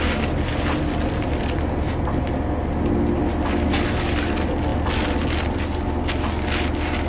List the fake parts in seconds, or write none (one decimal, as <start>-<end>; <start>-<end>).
none

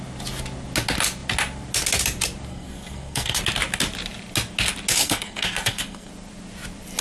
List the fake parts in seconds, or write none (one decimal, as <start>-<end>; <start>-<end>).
2.5-3.4; 5.0-6.1